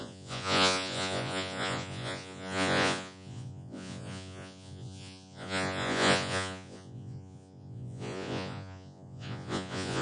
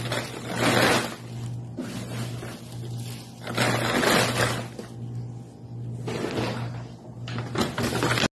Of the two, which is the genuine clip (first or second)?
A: second